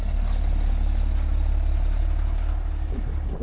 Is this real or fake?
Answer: real